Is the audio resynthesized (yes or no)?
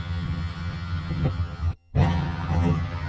yes